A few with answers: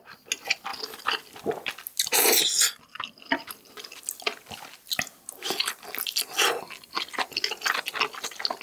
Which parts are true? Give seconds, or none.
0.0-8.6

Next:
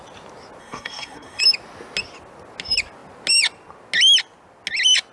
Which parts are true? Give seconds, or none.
0.0-0.6; 1.4-5.1

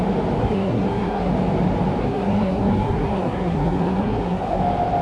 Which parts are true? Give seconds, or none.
0.0-0.4; 1.3-2.0; 4.6-5.0

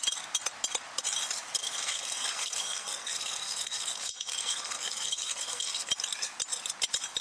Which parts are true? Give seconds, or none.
0.0-1.6; 5.9-7.2

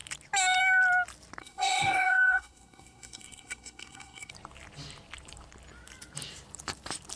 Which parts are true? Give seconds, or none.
0.0-1.4; 4.3-7.2

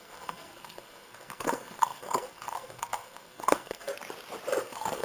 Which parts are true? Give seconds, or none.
3.9-4.6

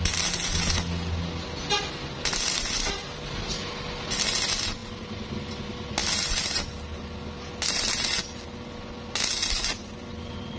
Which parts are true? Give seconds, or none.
0.0-10.6

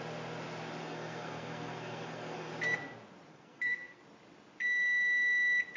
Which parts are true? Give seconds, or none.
0.0-0.8; 2.5-3.3; 4.0-5.8